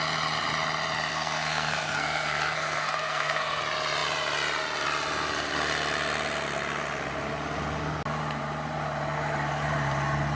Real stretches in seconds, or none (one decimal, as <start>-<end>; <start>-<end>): 0.0-1.1; 3.6-10.3